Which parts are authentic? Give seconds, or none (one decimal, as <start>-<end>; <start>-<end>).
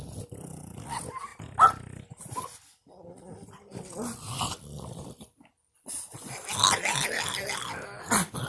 0.0-1.3; 5.5-8.5